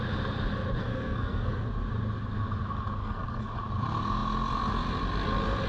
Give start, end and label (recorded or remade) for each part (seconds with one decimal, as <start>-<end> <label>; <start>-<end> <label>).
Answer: 0.0-0.8 recorded; 0.8-1.7 remade; 1.7-3.0 recorded; 3.0-3.5 remade; 3.5-5.7 recorded